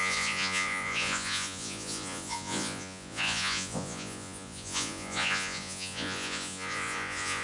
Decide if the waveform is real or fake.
fake